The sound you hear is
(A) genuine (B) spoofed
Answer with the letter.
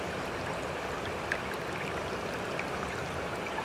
A